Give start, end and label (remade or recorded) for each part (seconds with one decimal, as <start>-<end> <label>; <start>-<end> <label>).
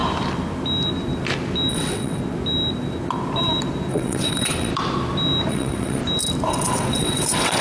0.0-1.7 recorded; 1.7-2.2 remade; 2.2-3.9 recorded; 3.9-4.7 remade; 4.7-5.5 recorded; 5.5-6.0 remade; 6.0-6.5 recorded; 6.5-7.6 remade